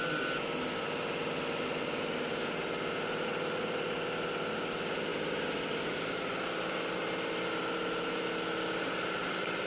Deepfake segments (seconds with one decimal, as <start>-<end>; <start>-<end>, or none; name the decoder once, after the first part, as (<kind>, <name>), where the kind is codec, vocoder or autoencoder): none